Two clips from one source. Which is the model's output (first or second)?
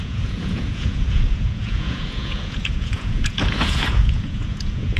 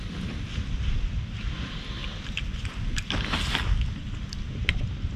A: first